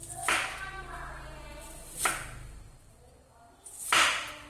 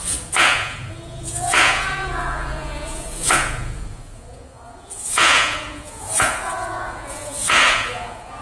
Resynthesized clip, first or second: second